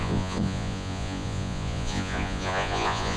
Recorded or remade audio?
remade